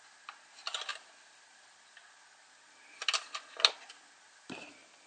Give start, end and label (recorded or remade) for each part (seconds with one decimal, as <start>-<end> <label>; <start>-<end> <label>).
0.0-5.1 recorded